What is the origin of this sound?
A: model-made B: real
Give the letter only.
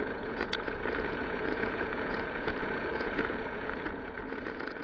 A